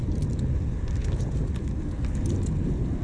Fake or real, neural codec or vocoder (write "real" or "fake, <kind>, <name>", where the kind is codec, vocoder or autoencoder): real